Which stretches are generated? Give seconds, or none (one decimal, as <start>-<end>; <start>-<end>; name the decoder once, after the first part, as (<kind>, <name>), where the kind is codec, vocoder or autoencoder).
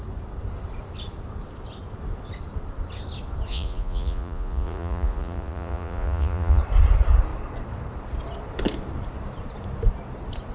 3.5-6.6 (vocoder, Vocos)